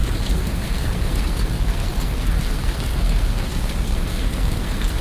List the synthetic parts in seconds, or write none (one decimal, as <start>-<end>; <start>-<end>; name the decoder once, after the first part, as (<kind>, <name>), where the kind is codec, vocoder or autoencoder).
0.0-5.0 (codec, SNAC)